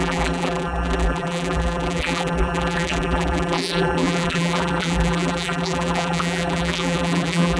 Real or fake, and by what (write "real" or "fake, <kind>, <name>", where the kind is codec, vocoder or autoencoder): fake, vocoder, BigVGAN v2